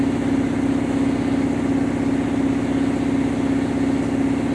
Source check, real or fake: real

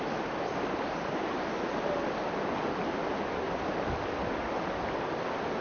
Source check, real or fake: real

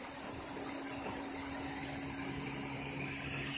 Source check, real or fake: real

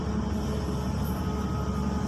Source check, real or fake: real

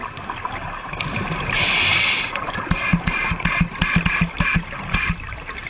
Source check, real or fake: real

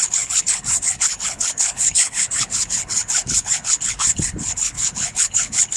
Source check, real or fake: fake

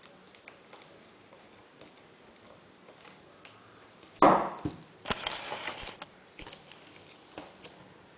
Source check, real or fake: real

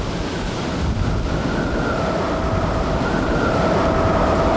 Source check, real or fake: real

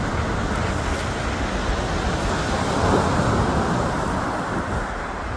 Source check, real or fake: real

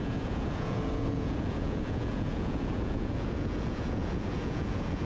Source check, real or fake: fake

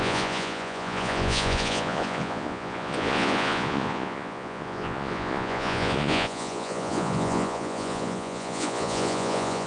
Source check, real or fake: fake